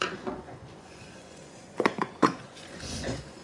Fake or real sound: fake